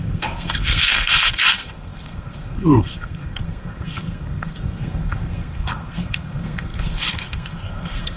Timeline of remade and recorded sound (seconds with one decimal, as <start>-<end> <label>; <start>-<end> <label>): 0.0-8.2 remade

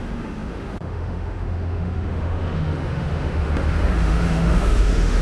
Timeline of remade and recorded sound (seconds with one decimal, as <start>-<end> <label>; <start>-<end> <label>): 0.0-5.2 remade

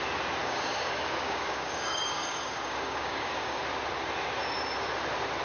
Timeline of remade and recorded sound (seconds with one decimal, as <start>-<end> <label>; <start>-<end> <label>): 0.0-0.4 recorded; 0.4-3.6 remade; 3.6-5.4 recorded

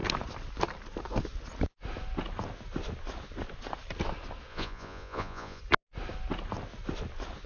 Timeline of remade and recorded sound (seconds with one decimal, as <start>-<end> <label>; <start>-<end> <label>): 0.0-4.5 recorded; 4.5-5.6 remade; 5.6-7.5 recorded

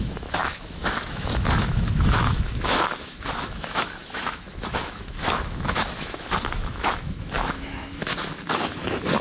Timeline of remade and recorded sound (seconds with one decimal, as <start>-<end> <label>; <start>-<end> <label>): 0.0-9.2 remade